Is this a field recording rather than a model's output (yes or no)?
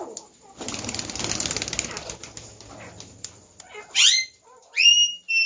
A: yes